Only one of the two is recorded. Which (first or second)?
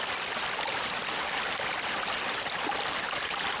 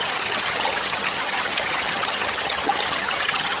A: first